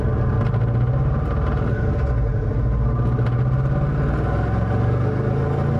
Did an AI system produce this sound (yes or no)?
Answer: no